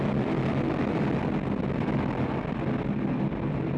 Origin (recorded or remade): recorded